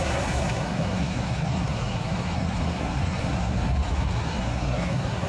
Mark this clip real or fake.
fake